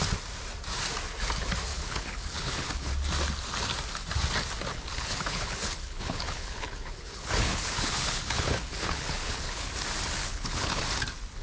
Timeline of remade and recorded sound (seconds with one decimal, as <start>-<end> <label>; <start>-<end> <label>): 0.0-1.7 recorded; 1.7-2.9 remade; 2.9-4.7 recorded; 4.7-9.7 remade; 9.7-10.2 recorded; 10.2-10.8 remade; 10.8-11.4 recorded